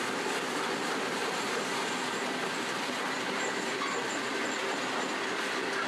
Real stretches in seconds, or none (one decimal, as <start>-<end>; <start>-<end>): 0.0-5.9